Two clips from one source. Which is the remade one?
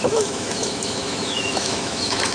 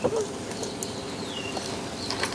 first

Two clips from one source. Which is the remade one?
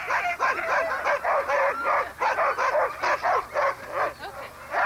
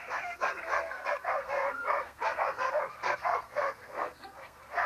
second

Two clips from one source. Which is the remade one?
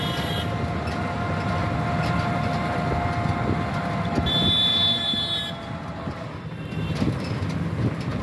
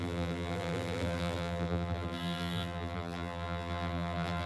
second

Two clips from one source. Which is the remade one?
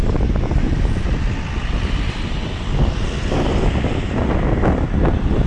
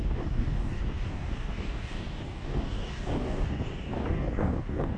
second